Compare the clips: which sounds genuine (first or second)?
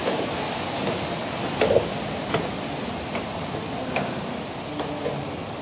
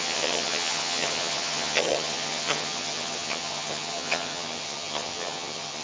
first